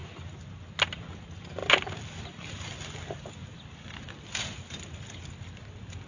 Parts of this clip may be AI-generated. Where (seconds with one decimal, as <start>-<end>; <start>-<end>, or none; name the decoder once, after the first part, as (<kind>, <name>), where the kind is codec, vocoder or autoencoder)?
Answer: none